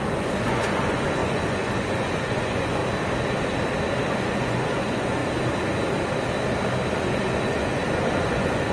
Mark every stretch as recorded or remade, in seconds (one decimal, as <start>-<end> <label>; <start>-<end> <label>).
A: 0.0-2.8 remade; 2.8-4.1 recorded; 4.1-5.2 remade; 5.2-6.9 recorded; 6.9-8.7 remade